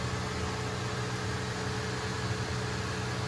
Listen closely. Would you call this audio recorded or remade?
recorded